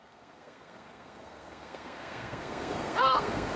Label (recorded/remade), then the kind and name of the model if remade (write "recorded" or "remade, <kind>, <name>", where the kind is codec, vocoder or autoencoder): remade, codec, SNAC